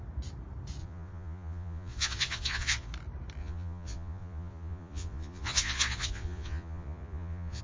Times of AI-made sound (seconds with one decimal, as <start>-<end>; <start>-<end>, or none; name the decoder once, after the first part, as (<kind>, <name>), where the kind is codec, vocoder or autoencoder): 0.8-2.9 (vocoder, Vocos); 3.4-7.6